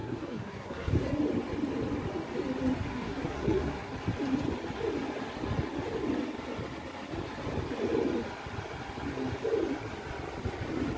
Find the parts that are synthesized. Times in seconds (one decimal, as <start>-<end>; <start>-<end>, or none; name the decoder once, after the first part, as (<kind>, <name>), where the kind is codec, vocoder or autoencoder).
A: 0.0-0.9 (codec, SNAC); 2.9-3.9